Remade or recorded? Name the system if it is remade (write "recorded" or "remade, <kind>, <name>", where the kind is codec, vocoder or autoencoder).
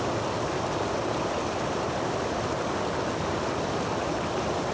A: recorded